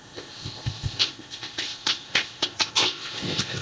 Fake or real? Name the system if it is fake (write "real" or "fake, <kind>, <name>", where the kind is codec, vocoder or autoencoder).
fake, codec, ZipCodec